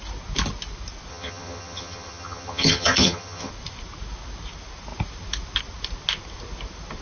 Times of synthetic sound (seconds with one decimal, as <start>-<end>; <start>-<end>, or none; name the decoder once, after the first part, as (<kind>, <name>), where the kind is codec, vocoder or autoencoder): 1.1-3.5 (vocoder, HiFi-GAN)